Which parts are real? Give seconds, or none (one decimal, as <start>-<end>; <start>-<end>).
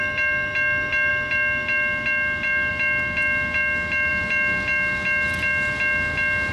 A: 0.0-6.5